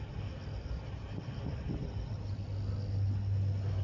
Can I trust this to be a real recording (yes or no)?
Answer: yes